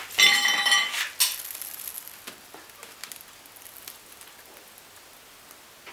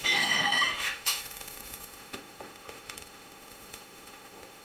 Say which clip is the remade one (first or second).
second